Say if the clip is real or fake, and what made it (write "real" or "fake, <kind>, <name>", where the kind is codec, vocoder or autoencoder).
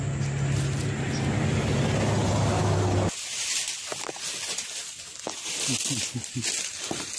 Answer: real